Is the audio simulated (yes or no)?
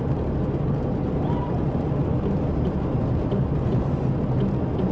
no